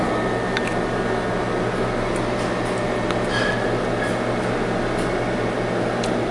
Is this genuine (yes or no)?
yes